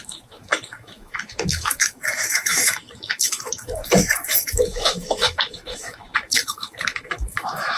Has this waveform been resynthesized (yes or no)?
yes